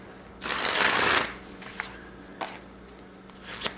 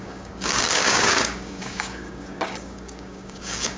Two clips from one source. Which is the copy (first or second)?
second